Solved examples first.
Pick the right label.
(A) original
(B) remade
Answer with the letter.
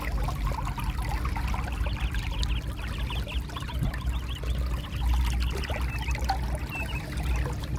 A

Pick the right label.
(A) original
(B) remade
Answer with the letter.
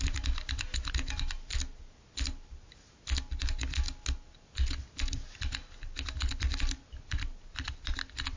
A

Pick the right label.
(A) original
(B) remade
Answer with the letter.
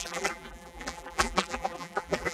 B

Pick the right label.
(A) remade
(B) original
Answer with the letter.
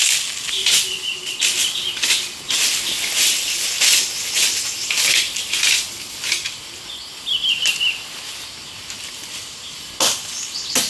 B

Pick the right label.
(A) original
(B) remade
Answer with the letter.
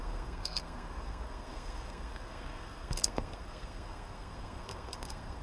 B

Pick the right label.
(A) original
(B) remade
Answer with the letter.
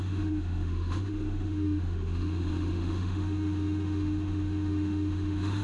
B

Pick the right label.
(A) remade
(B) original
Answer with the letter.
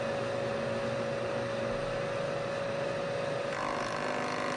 B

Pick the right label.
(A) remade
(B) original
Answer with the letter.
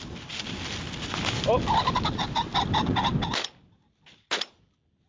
B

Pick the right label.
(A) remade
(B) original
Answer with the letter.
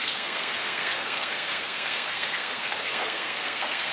A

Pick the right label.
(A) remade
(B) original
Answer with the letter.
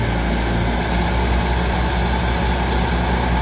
B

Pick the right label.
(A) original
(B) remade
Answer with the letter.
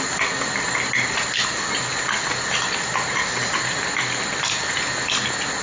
A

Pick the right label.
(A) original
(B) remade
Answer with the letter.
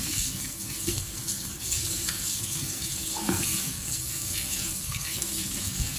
B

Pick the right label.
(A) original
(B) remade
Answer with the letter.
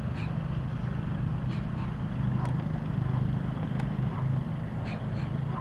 A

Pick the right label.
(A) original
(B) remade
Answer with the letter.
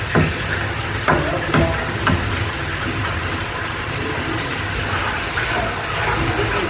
A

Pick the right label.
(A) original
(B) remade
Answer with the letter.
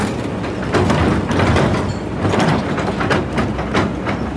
A